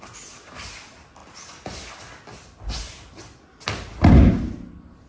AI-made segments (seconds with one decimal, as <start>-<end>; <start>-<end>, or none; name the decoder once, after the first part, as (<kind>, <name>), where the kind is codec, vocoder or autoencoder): none